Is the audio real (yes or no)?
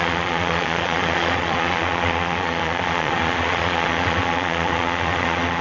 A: no